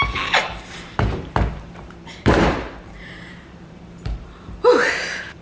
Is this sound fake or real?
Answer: fake